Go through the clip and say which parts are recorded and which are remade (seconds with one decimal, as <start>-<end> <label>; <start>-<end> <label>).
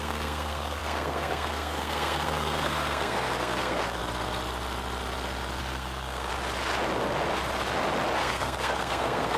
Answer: 0.0-4.0 remade; 4.0-5.6 recorded; 5.6-6.3 remade; 6.3-8.2 recorded; 8.2-9.4 remade